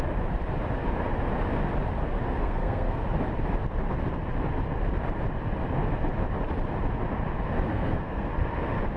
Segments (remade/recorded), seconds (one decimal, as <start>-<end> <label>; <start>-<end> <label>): 0.0-2.4 recorded; 2.4-3.0 remade; 3.0-7.7 recorded; 7.7-8.3 remade; 8.3-9.0 recorded